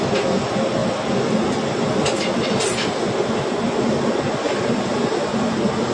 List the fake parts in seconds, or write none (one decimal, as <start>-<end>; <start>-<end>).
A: none